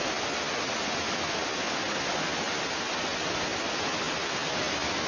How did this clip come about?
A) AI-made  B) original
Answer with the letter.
B